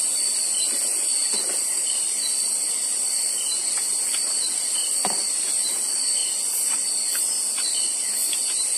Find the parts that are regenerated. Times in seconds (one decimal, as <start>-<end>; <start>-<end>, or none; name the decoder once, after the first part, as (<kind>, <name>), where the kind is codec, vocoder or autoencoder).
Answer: none

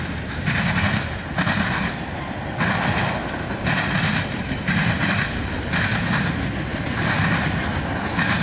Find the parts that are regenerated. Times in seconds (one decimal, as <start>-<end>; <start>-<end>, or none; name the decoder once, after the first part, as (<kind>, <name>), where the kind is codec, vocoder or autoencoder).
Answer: 6.7-7.6 (vocoder, BigVGAN v2)